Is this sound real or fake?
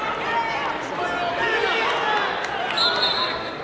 real